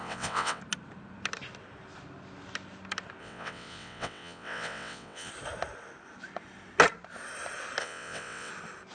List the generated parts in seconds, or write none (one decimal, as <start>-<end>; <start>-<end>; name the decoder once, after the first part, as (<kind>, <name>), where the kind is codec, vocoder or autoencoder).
0.0-0.6 (vocoder, WaveNeXt); 3.2-5.3; 7.8-8.5

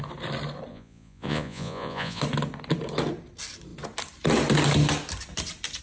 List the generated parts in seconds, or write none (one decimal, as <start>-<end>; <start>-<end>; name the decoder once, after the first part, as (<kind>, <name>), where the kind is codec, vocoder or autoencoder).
0.7-2.2 (vocoder, Vocos)

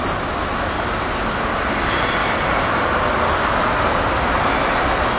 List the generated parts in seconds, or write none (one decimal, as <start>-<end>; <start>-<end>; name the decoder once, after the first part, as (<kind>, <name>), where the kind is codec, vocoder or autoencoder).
none

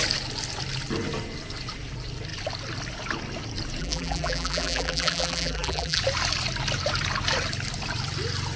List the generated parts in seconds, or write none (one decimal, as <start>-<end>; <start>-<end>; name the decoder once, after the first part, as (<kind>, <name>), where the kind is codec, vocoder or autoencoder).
3.8-6.0 (vocoder, BigVGAN v2)

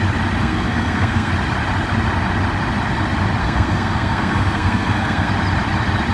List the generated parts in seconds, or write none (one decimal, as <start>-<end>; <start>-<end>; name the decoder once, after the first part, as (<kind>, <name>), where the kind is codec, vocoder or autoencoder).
0.4-1.3 (codec, SNAC); 3.4-5.3

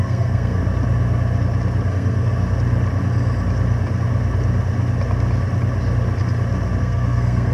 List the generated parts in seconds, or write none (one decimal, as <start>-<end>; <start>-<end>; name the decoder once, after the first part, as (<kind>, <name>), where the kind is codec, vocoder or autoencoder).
0.0-0.6 (codec, SNAC); 1.9-2.3; 6.8-7.5